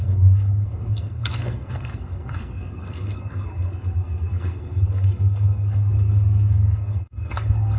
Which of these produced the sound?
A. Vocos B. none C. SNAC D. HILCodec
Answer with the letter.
C